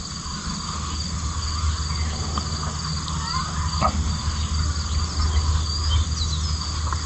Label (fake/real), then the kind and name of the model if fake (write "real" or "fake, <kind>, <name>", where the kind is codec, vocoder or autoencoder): real